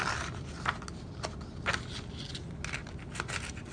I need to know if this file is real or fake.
real